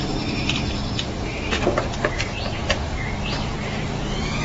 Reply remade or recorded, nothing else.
remade